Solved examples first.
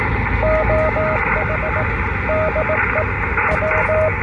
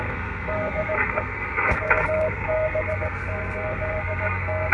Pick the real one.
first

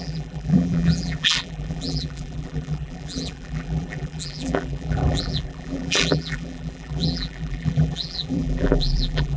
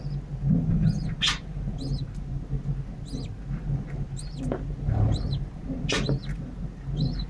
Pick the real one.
second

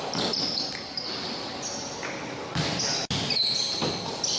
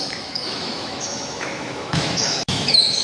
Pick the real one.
first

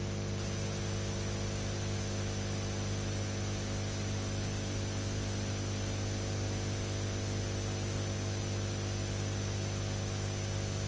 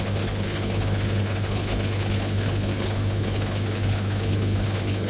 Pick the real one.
first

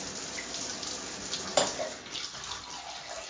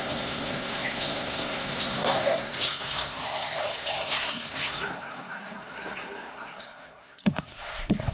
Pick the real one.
first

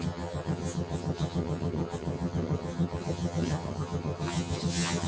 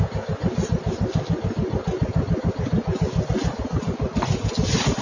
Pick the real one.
second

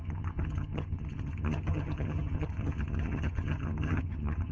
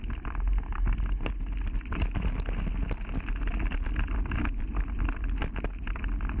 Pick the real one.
second